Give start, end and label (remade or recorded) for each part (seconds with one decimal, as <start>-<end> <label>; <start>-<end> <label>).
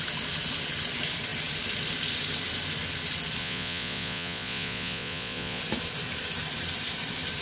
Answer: 0.0-3.4 recorded; 3.4-5.6 remade; 5.6-7.4 recorded